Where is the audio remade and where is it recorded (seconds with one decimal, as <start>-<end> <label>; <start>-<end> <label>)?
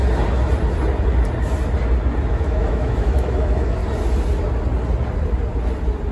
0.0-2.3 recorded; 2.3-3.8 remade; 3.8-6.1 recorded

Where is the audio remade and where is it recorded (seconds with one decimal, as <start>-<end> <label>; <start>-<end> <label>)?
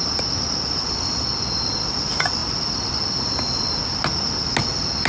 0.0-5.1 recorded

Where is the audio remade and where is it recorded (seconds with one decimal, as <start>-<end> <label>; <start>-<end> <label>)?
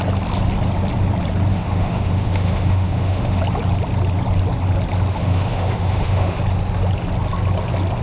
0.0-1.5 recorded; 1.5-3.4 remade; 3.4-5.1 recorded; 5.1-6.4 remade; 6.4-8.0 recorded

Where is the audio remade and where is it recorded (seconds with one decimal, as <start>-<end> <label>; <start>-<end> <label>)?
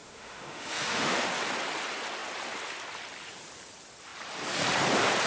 0.0-1.3 remade; 1.3-5.3 recorded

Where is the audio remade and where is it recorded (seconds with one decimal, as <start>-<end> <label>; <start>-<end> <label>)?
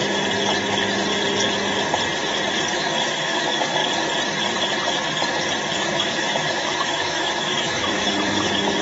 0.0-2.7 recorded; 2.7-3.8 remade; 3.8-5.8 recorded; 5.8-8.8 remade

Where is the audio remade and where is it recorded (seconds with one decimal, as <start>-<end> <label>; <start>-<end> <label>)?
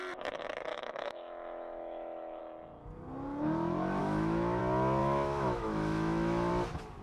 0.0-0.7 recorded; 0.7-2.4 remade; 2.4-4.0 recorded; 4.0-4.6 remade; 4.6-5.0 recorded; 5.0-6.5 remade; 6.5-7.0 recorded